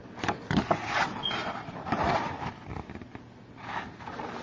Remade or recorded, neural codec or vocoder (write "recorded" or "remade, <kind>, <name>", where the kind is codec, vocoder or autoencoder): recorded